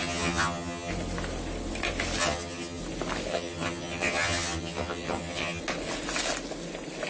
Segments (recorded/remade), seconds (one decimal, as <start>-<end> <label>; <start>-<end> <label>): 0.0-0.9 remade; 0.9-2.2 recorded; 2.2-2.8 remade; 2.8-3.3 recorded; 3.3-5.6 remade; 5.6-7.1 recorded